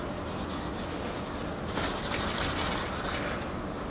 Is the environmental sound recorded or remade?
recorded